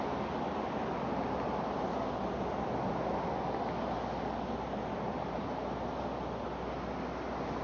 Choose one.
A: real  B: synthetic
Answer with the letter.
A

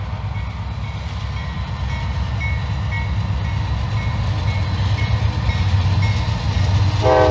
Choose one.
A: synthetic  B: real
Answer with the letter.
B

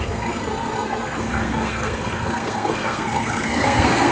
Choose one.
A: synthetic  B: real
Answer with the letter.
A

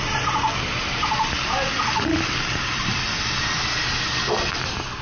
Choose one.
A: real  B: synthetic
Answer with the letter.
A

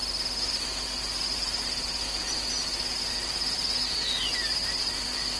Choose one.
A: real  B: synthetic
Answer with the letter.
A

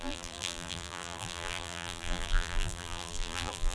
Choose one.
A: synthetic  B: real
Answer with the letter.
A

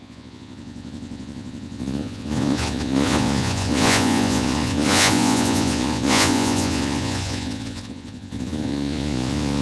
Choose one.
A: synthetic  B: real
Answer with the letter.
A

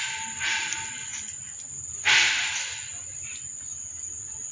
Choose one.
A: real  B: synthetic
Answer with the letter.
A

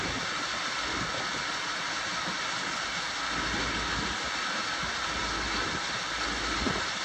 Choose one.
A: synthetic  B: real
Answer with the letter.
B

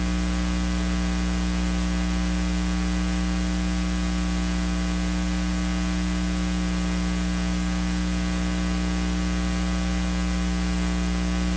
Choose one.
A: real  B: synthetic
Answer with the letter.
A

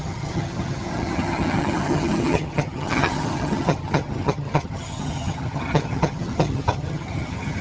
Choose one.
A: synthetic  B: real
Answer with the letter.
A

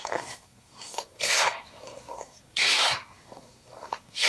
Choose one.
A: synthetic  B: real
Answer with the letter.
A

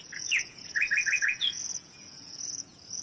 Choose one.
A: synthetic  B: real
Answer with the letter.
A